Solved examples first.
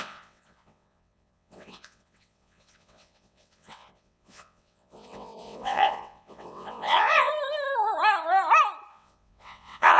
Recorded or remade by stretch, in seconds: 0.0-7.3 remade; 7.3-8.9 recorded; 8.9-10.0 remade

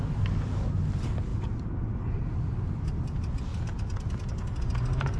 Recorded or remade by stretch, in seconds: 0.0-5.2 recorded

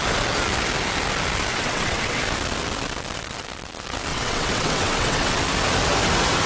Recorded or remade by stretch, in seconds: 0.0-1.5 recorded; 1.5-2.2 remade; 2.2-4.1 recorded; 4.1-5.4 remade; 5.4-6.5 recorded